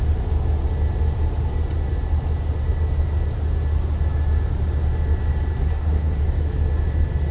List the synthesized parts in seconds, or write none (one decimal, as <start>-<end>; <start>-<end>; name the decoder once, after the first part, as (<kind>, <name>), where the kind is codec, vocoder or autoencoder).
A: 5.6-6.2 (codec, SNAC)